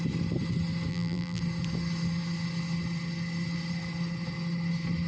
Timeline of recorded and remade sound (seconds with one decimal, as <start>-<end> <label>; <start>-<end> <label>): 0.0-0.9 recorded; 0.9-1.4 remade; 1.4-5.1 recorded